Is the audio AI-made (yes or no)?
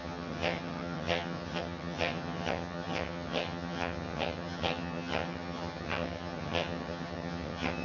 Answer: yes